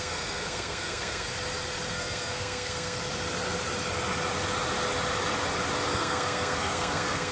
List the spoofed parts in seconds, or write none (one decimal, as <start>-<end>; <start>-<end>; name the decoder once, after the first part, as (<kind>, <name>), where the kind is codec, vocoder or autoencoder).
0.0-1.3 (codec, SNAC); 1.9-3.0; 5.9-7.3